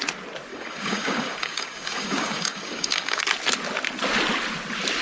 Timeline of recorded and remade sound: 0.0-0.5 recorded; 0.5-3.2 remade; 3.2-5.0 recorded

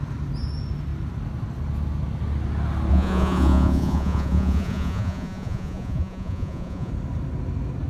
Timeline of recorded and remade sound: 0.0-2.9 recorded; 2.9-6.9 remade; 6.9-7.9 recorded